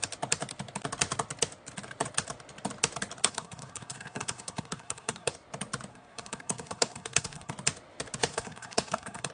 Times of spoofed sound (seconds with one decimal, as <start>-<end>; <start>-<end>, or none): 3.2-5.3; 5.9-7.5; 8.3-9.3

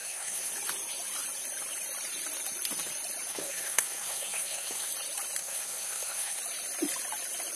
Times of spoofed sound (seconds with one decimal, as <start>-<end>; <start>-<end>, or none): 0.0-0.5; 3.3-4.9; 5.4-6.4

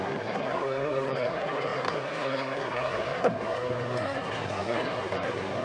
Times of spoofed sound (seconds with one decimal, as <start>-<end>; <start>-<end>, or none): 0.0-5.6

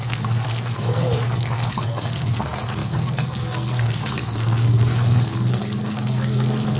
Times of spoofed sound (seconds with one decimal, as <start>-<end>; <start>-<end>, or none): 0.0-6.8

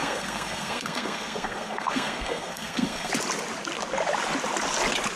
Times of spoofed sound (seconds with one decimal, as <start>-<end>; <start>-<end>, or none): 0.0-3.1

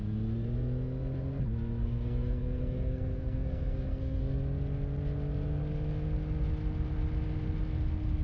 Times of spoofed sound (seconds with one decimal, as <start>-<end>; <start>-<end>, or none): 1.8-4.2

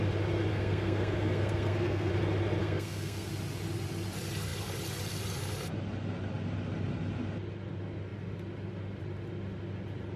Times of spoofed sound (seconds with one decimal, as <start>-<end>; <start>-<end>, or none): 0.5-2.1; 2.6-3.3